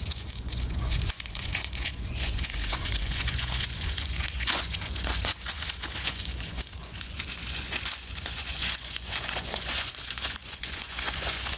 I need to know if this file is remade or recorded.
remade